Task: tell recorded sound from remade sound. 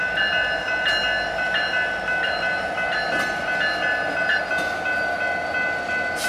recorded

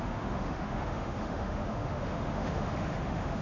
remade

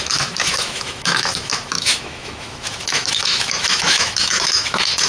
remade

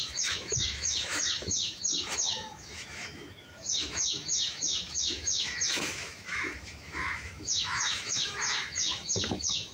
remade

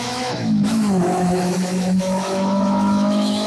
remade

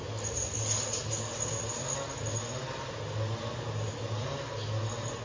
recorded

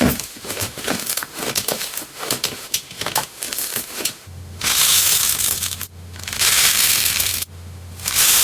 remade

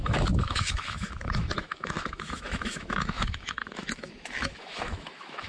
remade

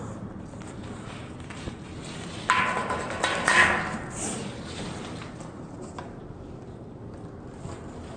recorded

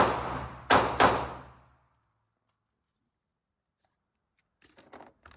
recorded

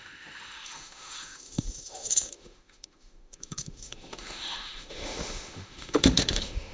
remade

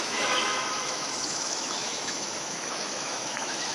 remade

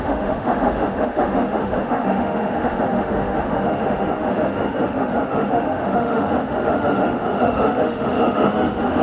remade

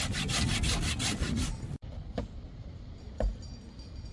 recorded